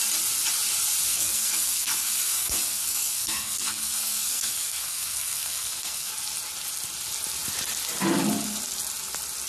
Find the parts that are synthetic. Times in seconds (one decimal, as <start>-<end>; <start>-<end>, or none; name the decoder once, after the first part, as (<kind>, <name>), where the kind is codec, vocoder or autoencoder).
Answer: 1.1-6.1 (codec, SNAC)